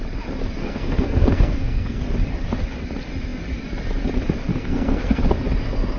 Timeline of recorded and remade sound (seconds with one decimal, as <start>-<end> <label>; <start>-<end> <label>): 0.0-0.6 recorded; 0.6-2.0 remade; 2.0-4.5 recorded; 4.5-5.2 remade; 5.2-6.0 recorded